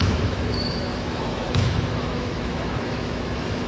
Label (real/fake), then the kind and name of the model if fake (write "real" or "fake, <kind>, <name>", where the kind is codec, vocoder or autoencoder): fake, autoencoder, DAC-VAE